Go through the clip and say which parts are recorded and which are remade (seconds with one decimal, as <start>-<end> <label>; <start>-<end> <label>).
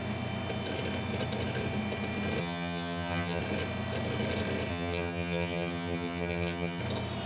0.0-2.4 recorded; 2.4-3.4 remade; 3.4-4.7 recorded; 4.7-6.8 remade; 6.8-7.3 recorded